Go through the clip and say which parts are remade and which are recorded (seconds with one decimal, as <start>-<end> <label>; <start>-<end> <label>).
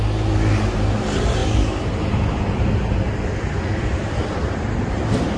0.0-1.4 remade; 1.4-4.6 recorded; 4.6-5.4 remade